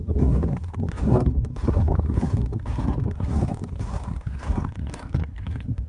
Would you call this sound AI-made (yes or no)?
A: yes